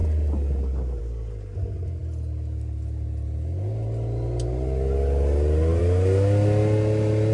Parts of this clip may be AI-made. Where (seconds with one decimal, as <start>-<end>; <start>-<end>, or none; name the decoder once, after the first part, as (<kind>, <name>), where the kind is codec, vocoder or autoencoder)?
none